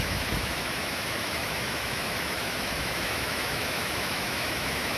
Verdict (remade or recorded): remade